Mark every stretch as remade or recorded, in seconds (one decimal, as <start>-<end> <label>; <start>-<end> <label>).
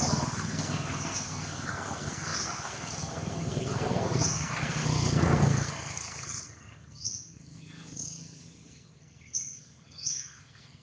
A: 0.0-10.8 remade